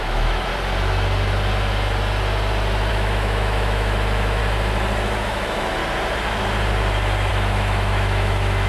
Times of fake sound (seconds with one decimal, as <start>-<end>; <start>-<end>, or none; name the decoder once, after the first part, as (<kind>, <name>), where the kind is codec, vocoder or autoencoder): 0.0-0.5 (autoencoder, DAC-VAE); 2.9-4.4; 5.0-5.8; 7.3-8.7